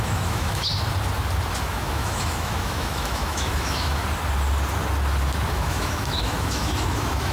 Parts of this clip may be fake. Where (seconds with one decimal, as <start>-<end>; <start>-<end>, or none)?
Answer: 0.0-0.7; 1.6-4.0; 5.5-7.3